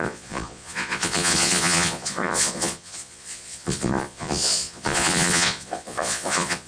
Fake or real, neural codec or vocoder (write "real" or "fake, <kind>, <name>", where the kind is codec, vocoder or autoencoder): fake, vocoder, Vocos